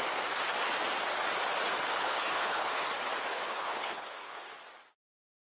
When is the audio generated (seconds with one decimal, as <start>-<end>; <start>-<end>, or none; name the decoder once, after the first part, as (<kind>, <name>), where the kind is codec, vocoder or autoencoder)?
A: 1.9-2.9 (codec, HILCodec); 3.3-4.6